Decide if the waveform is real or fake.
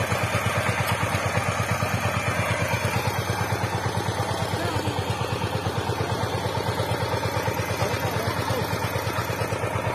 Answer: real